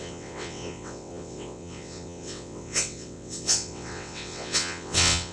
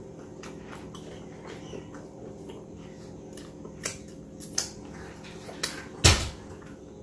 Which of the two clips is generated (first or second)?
first